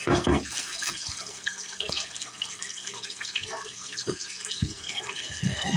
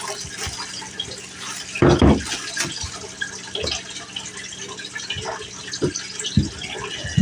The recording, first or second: second